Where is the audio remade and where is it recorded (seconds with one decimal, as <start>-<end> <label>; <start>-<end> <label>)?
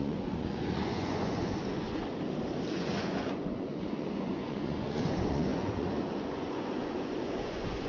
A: 0.0-2.0 remade; 2.0-2.7 recorded; 2.7-7.9 remade